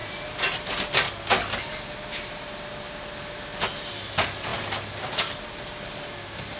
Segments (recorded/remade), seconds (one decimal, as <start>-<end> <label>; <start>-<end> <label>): 0.0-6.6 recorded